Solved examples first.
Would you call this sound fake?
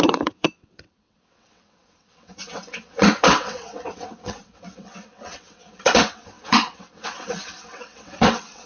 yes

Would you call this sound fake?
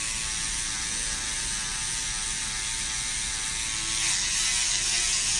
no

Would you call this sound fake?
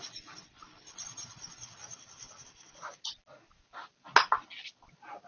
no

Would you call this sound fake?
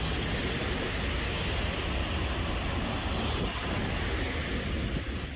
no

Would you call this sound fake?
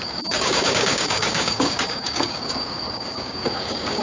yes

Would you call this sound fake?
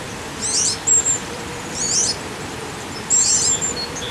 yes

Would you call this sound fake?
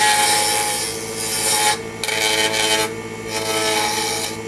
no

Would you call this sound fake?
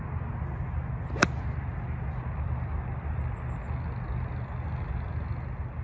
no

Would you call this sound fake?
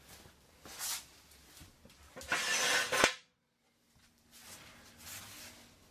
no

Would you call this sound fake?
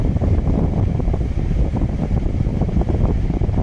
yes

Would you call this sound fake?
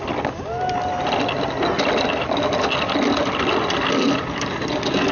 no